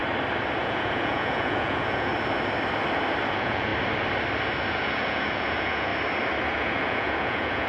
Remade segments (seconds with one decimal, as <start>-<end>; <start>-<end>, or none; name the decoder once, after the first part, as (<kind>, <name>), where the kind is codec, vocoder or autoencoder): 0.6-2.1 (vocoder, Vocos); 3.3-3.7; 4.7-5.9; 6.5-7.7